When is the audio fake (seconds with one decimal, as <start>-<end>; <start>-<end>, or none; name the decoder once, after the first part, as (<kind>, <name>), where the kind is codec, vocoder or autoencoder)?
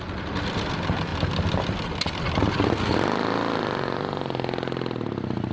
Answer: none